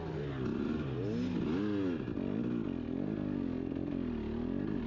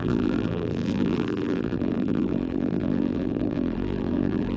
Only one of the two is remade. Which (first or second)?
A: second